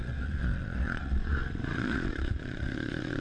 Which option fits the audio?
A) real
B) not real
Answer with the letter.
B